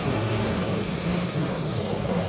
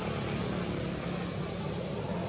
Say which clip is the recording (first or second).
second